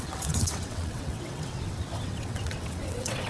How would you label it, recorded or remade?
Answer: remade